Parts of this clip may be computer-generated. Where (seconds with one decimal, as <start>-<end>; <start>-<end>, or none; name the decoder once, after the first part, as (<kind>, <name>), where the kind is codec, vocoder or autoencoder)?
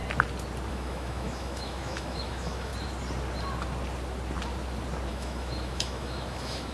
0.7-2.7 (autoencoder, DAC-VAE); 5.1-6.7